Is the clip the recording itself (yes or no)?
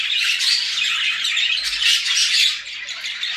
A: yes